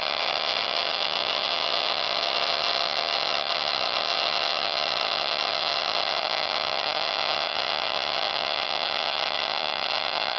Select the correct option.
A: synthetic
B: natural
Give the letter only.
A